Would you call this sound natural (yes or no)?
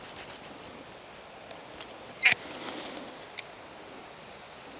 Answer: yes